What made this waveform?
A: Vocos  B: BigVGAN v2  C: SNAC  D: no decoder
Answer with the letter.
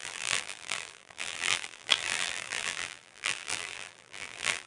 B